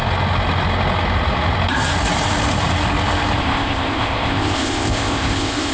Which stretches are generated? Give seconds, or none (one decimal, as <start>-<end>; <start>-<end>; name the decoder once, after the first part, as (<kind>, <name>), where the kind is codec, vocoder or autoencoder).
3.4-5.7 (codec, ZipCodec)